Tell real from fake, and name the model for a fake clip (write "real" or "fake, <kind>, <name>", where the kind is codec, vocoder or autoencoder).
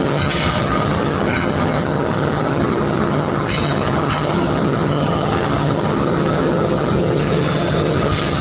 fake, vocoder, HiFi-GAN